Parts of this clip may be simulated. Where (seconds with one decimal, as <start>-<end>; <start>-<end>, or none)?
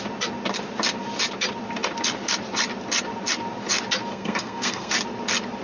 4.1-4.9